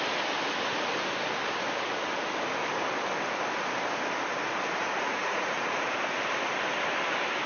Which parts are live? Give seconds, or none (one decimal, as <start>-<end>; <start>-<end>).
0.0-4.8; 6.1-7.5